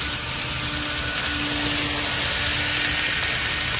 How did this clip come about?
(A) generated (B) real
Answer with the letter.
B